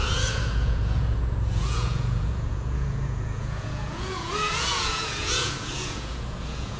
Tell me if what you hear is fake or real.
fake